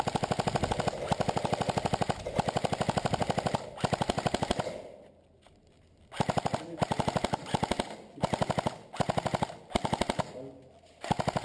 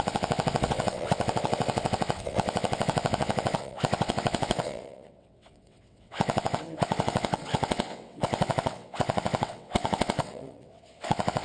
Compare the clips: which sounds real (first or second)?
first